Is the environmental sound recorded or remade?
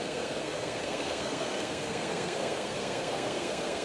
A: remade